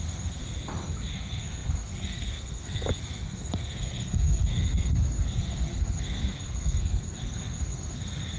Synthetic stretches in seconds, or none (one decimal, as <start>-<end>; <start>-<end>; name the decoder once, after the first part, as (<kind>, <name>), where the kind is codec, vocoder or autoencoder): 0.0-0.4 (codec, SNAC); 1.1-8.4